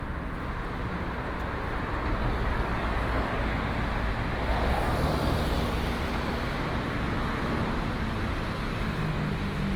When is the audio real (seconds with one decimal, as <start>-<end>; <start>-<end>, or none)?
0.0-2.2; 3.4-9.8